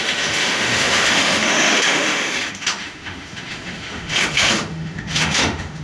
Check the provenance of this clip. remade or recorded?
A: remade